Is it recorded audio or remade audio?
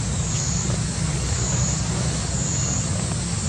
recorded